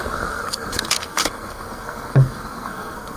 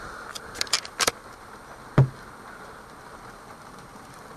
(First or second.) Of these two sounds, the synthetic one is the first